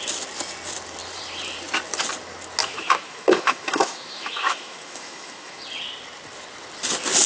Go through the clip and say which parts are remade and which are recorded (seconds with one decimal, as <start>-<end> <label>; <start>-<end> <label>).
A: 0.0-2.6 recorded; 2.6-5.6 remade; 5.6-7.3 recorded